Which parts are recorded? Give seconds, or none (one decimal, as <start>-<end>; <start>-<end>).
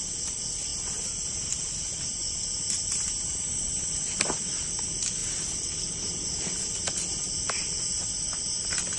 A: 0.0-2.2; 4.6-5.2; 7.8-9.0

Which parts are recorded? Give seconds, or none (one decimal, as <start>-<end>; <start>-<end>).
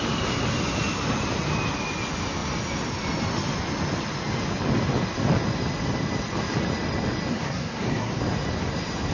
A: 0.0-7.3; 8.2-9.1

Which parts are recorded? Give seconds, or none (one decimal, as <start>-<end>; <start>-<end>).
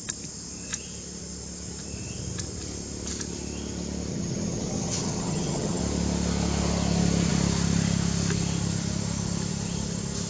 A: 0.0-4.1; 5.8-10.3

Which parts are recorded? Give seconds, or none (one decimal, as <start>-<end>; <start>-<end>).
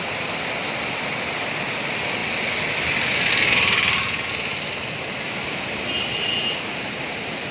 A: 0.0-2.2; 3.3-7.5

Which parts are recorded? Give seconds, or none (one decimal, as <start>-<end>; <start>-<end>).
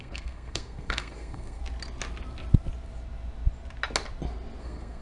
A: 1.6-4.6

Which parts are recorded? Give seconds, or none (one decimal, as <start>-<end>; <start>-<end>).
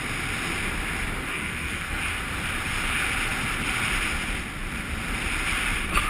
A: 0.0-1.3; 2.0-6.1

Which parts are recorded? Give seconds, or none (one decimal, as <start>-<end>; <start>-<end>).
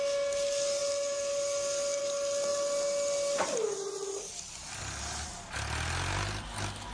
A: 0.0-6.9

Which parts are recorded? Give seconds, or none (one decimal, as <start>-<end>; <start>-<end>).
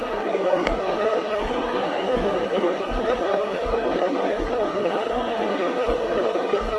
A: none